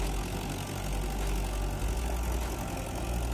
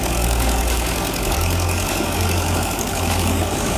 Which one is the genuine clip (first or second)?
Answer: first